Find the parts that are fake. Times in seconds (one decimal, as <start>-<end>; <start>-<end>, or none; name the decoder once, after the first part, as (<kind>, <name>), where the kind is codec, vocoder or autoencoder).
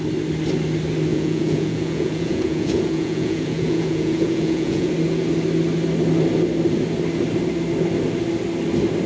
1.1-4.9 (vocoder, Vocos)